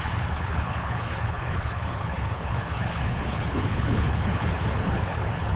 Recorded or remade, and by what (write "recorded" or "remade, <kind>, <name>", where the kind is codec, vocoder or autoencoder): remade, codec, HILCodec